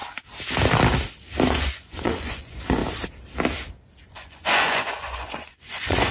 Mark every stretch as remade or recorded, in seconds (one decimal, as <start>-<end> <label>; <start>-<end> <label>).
0.0-1.5 recorded; 1.5-2.8 remade; 2.8-4.1 recorded; 4.1-6.1 remade